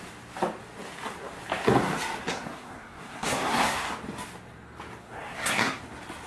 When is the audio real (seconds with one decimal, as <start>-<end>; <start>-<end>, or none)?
0.0-2.3; 3.9-5.0; 5.8-6.3